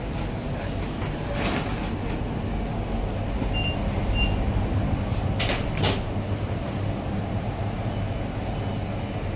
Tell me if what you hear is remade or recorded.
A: recorded